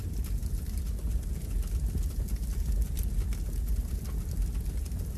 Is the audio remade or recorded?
recorded